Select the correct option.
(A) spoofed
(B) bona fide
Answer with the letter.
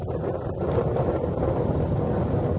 B